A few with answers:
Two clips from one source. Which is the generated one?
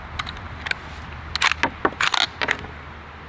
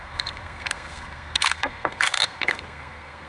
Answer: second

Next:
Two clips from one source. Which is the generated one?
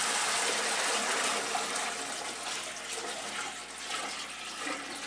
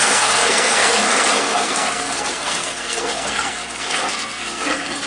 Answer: second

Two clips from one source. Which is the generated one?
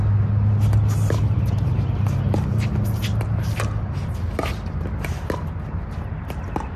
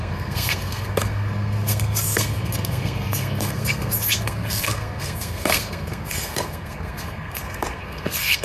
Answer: second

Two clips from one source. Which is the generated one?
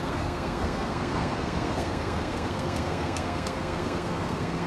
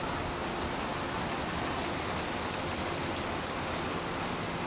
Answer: first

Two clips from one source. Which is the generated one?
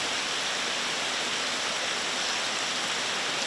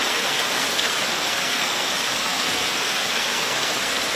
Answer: second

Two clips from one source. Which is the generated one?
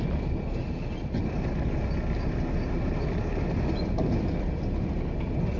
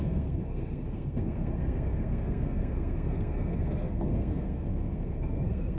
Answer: second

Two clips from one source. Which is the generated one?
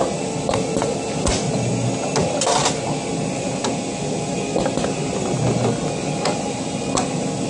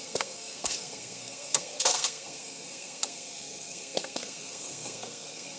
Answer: second